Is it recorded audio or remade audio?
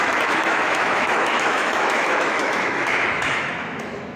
remade